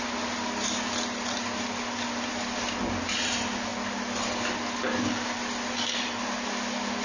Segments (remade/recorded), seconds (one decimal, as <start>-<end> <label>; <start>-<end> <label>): 0.0-7.0 recorded